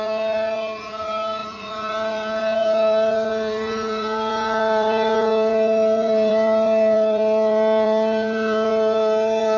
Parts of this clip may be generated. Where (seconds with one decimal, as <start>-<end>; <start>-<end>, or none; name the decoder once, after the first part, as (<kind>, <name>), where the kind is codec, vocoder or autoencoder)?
0.0-9.6 (vocoder, Vocos)